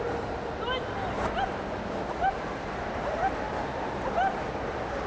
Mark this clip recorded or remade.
recorded